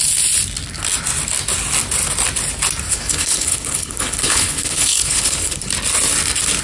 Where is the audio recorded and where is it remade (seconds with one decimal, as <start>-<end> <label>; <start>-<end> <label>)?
0.0-2.9 recorded; 2.9-5.7 remade; 5.7-6.6 recorded